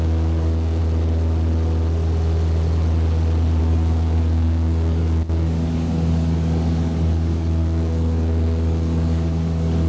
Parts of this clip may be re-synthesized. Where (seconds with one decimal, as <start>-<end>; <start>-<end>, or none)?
0.0-0.8; 3.6-9.9